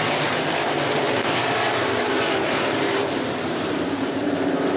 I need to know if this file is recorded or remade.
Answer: remade